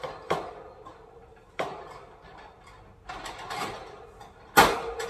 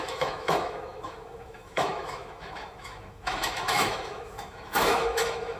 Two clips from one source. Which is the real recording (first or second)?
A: first